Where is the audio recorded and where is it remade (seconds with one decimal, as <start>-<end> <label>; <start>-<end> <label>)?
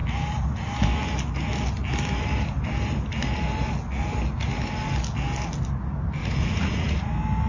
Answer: 0.0-6.2 recorded; 6.2-7.1 remade; 7.1-7.5 recorded